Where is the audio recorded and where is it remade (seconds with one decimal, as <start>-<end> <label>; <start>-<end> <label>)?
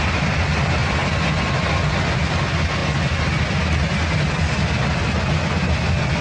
0.0-6.2 recorded